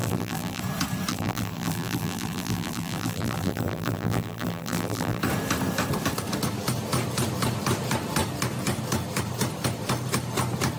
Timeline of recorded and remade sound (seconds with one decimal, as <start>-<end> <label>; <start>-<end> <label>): 0.0-0.6 remade; 0.6-1.1 recorded; 1.1-5.2 remade; 5.2-10.8 recorded